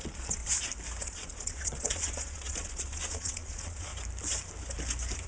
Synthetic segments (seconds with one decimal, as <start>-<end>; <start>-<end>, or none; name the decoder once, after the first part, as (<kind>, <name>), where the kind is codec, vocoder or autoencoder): 0.0-0.4 (vocoder, Vocos); 1.0-3.9